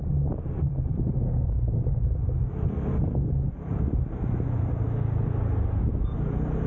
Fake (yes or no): no